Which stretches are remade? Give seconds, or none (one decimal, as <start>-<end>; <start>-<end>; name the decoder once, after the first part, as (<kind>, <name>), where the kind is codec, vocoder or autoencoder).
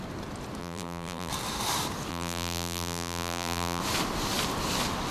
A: 0.6-1.3 (vocoder, BigVGAN v2); 2.1-3.8